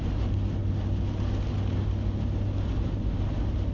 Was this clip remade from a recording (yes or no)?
no